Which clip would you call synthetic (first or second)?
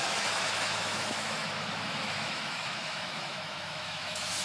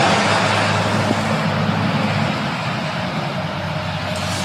first